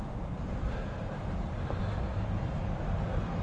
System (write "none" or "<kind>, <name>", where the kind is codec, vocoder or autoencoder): none